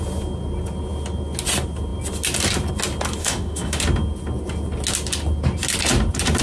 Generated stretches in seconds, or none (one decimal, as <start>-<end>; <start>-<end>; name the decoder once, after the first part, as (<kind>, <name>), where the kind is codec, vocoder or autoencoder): 3.2-3.8 (autoencoder, DAC-VAE)